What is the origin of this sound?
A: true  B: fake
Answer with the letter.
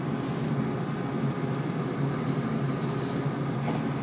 A